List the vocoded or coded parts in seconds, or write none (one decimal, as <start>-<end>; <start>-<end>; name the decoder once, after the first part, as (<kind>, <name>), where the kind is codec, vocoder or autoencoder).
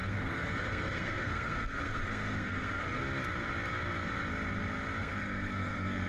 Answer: 0.0-3.0 (codec, SNAC); 5.0-6.1